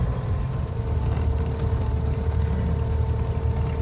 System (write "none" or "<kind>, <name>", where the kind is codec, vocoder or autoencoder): none